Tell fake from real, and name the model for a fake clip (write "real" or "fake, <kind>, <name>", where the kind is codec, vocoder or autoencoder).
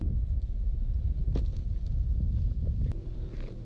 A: real